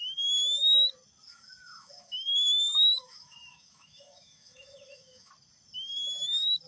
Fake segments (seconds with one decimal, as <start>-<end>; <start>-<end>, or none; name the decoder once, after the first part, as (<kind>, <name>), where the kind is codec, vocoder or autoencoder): 1.3-5.3 (autoencoder, DAC-VAE)